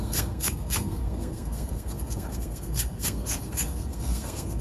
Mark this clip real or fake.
fake